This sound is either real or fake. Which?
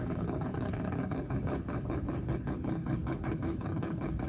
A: fake